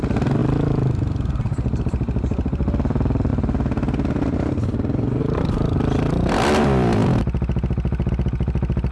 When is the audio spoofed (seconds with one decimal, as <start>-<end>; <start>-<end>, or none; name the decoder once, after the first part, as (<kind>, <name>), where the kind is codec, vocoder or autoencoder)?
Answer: 0.0-3.3 (vocoder, BigVGAN v2); 5.2-7.0; 8.1-8.9